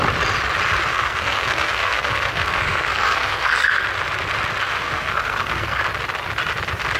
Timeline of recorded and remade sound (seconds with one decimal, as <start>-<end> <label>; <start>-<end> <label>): 0.0-0.9 recorded; 0.9-3.8 remade; 3.8-4.7 recorded; 4.7-5.8 remade; 5.8-7.0 recorded